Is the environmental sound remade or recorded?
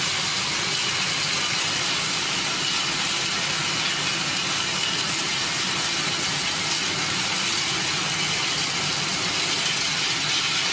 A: recorded